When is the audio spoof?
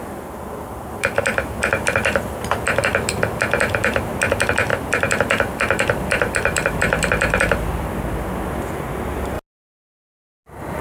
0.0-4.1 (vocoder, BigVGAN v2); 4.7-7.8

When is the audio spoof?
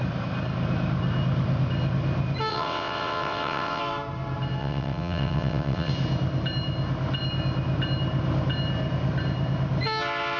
2.5-3.8 (vocoder, WaveNeXt); 4.6-5.9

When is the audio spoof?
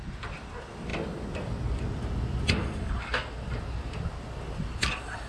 none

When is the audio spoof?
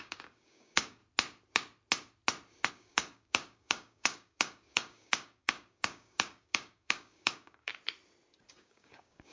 0.0-1.0 (codec, DAC); 2.7-7.7; 8.5-9.3